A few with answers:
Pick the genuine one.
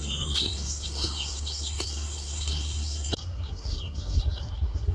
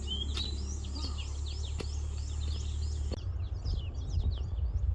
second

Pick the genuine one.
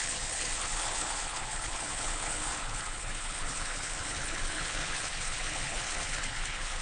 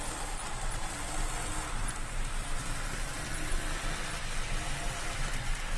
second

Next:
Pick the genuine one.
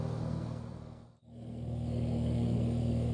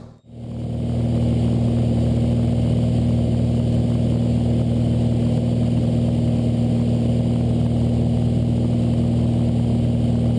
second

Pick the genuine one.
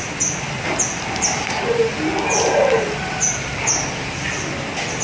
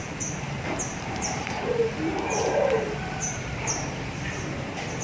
first